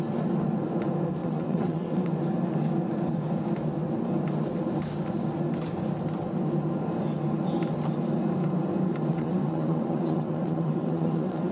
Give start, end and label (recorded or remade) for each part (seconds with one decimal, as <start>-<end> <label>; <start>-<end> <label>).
0.0-1.2 recorded; 1.2-2.1 remade; 2.1-9.1 recorded; 9.1-11.5 remade